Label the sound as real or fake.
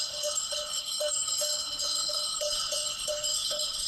fake